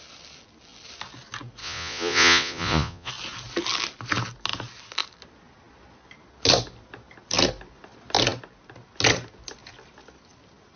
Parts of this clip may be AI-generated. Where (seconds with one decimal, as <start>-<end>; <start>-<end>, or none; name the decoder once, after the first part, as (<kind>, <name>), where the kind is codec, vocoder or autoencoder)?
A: 1.6-3.1 (vocoder, Vocos)